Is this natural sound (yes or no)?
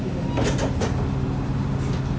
yes